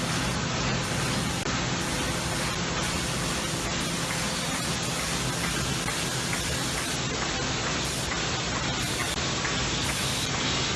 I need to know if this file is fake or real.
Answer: real